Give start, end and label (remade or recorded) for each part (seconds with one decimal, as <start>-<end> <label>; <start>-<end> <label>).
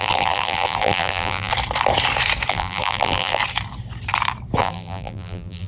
0.0-1.5 remade; 1.5-2.5 recorded; 2.5-3.4 remade; 3.4-4.6 recorded; 4.6-5.7 remade